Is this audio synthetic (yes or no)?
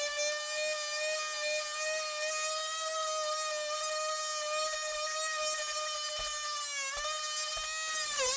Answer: no